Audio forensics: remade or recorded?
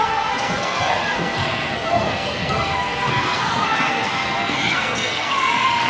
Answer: remade